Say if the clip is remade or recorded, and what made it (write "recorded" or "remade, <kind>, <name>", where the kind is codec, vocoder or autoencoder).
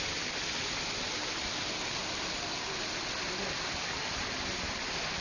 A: recorded